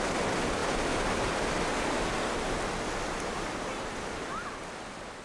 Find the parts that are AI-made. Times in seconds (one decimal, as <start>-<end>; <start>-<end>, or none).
none